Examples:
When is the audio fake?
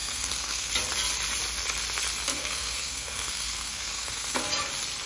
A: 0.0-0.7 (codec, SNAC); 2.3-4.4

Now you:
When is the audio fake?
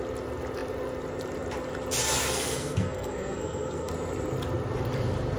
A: 2.2-3.9 (codec, SNAC)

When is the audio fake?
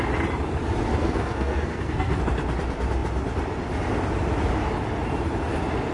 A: 0.9-2.2 (codec, SNAC)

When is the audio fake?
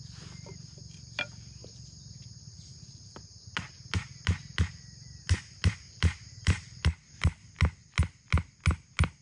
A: none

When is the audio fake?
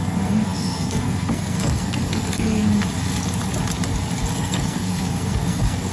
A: 0.0-2.7 (codec, SNAC); 4.3-5.9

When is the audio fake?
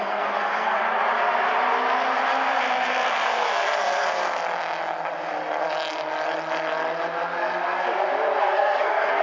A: 0.0-0.8 (codec, SNAC); 3.1-4.4; 8.4-9.2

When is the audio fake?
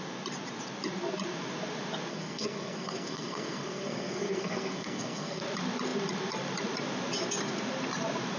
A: 2.1-5.4 (codec, SNAC)